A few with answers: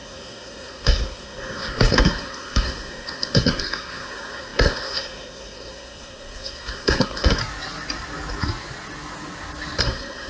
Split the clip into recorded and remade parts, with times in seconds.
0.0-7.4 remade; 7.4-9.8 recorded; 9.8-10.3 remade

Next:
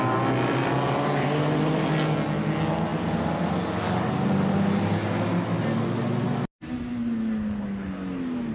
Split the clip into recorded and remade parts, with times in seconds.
0.0-8.5 recorded

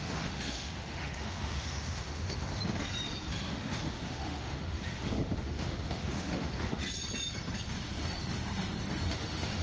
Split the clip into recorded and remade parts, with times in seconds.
0.0-2.6 remade; 2.6-3.3 recorded; 3.3-6.8 remade; 6.8-9.1 recorded; 9.1-9.6 remade